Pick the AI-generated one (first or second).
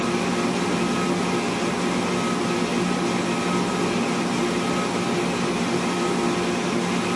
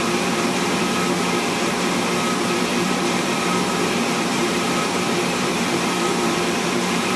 second